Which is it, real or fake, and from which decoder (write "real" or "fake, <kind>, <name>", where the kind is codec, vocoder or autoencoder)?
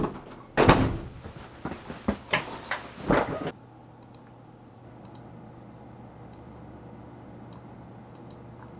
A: real